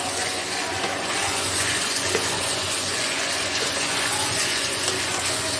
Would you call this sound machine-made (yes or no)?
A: yes